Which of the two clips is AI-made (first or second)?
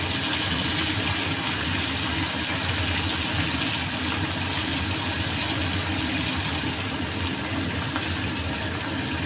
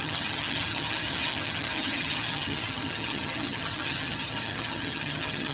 second